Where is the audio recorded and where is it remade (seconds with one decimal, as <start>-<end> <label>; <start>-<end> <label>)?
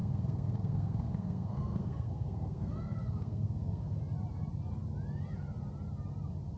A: 0.0-4.0 remade; 4.0-6.6 recorded